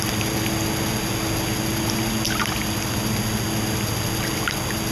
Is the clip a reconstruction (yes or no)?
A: no